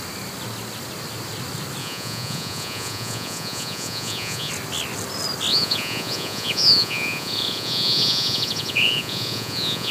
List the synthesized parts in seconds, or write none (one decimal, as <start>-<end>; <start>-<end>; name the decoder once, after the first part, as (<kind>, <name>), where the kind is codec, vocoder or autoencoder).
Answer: 1.8-4.5 (vocoder, Vocos); 5.5-9.9